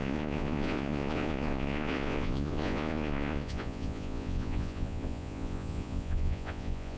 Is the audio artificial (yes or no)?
yes